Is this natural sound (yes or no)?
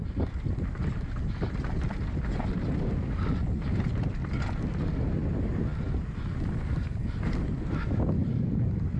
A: yes